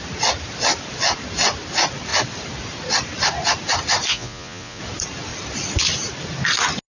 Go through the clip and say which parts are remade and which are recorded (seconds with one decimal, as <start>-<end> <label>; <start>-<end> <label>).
0.0-4.1 recorded; 4.1-4.8 remade; 4.8-6.9 recorded